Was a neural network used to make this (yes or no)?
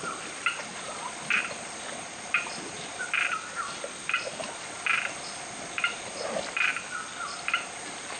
no